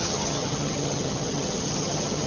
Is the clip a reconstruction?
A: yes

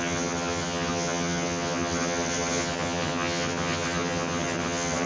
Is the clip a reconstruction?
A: yes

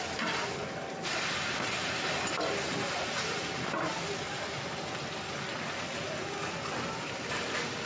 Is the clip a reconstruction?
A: no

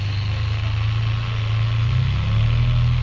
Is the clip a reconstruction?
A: no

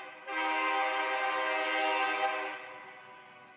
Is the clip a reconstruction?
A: no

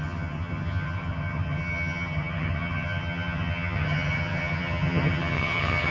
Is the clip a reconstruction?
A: yes